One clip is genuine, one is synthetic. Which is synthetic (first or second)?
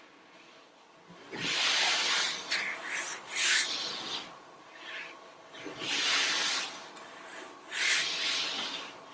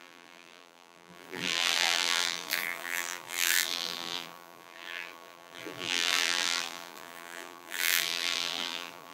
second